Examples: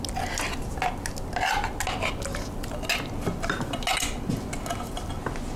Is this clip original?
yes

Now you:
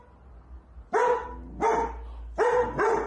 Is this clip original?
yes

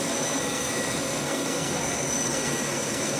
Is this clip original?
no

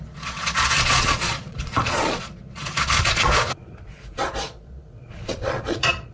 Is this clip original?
no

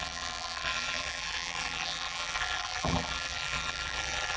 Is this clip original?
no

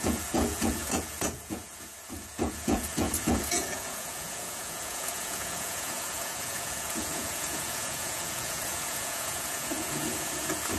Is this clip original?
no